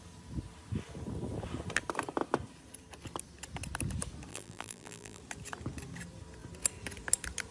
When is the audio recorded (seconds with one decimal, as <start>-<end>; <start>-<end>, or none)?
0.0-4.3; 5.2-7.5